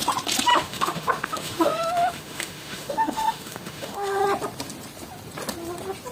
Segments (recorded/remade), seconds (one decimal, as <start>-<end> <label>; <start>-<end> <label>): 0.0-0.5 recorded; 0.5-4.2 remade; 4.2-6.1 recorded